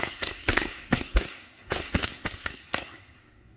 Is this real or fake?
fake